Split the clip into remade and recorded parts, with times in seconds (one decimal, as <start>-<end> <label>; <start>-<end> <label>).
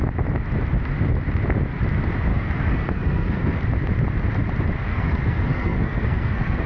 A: 0.0-2.3 recorded; 2.3-3.6 remade; 3.6-4.9 recorded; 4.9-6.7 remade